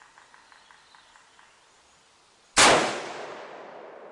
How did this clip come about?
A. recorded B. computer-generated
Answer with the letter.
A